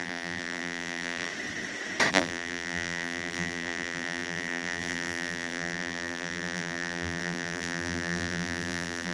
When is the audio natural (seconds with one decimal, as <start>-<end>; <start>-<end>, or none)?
1.3-2.1